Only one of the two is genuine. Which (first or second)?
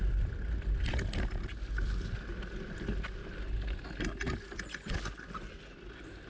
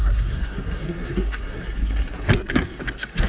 first